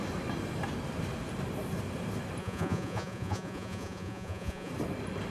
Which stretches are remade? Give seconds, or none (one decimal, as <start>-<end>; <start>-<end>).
2.4-4.7